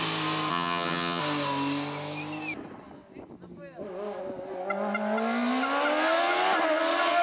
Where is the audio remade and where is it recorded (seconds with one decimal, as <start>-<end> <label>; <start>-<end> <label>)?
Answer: 0.0-0.5 recorded; 0.5-1.2 remade; 1.2-7.2 recorded